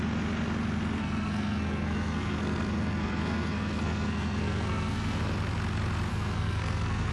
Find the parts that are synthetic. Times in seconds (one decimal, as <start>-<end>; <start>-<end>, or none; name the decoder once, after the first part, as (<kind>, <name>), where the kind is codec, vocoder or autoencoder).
1.0-5.2 (codec, SNAC); 6.1-7.1